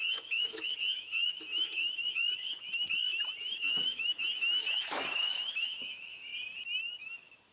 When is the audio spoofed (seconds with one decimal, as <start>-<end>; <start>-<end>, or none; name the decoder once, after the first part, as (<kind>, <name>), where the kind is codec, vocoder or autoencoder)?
0.0-6.3 (autoencoder, DAC-VAE); 7.0-7.5